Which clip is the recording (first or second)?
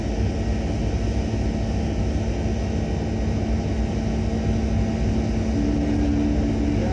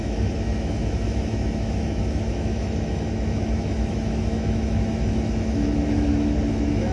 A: first